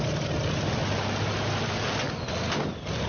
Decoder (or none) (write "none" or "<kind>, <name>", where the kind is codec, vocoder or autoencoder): none